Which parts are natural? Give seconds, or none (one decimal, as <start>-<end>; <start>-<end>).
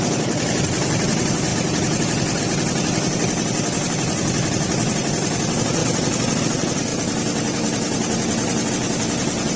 0.0-9.6